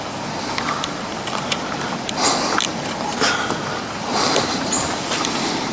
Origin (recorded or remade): recorded